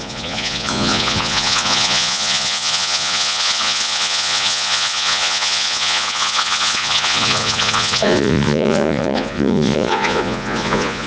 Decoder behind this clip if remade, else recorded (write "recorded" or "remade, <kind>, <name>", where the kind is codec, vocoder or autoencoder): remade, vocoder, Vocos